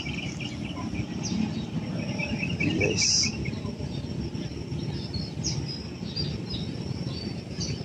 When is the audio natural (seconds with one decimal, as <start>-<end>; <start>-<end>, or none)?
0.0-7.8